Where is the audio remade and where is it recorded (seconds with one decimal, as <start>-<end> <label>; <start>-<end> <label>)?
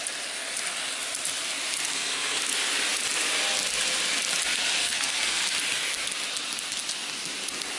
0.0-1.9 recorded; 1.9-2.4 remade; 2.4-4.8 recorded; 4.8-5.4 remade; 5.4-7.8 recorded